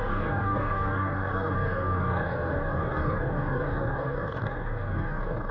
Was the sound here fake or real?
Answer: fake